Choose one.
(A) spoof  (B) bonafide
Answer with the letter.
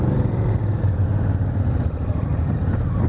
B